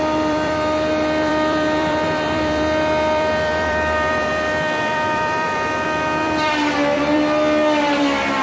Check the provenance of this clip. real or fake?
fake